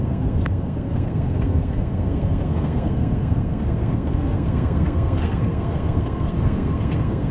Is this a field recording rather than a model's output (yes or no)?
no